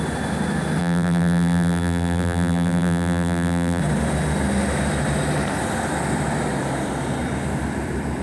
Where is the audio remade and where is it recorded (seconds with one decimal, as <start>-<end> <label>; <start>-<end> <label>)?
0.0-0.8 recorded; 0.8-3.8 remade; 3.8-8.2 recorded